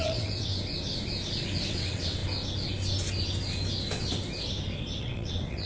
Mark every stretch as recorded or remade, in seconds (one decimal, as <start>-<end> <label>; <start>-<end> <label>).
0.0-0.5 remade; 0.5-1.7 recorded; 1.7-2.2 remade; 2.2-5.0 recorded; 5.0-5.7 remade